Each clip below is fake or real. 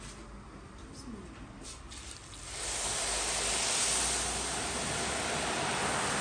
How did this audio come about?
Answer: real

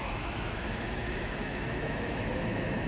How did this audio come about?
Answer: fake